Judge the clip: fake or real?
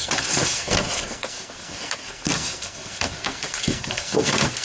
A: fake